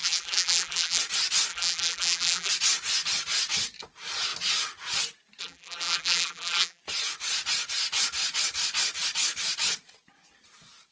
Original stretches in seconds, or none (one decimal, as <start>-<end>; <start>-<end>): 1.0-1.5; 2.5-5.4; 6.8-10.9